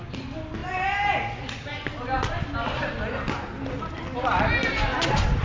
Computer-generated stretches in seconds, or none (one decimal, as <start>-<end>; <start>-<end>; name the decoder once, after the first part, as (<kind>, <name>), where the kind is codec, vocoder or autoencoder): none